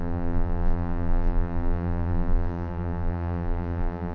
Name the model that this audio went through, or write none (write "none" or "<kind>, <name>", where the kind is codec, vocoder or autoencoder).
vocoder, BigVGAN v2